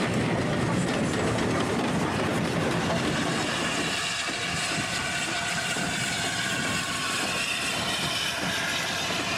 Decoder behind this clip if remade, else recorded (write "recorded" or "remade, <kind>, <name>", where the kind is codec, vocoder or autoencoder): recorded